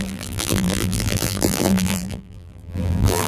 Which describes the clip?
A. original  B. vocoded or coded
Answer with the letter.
B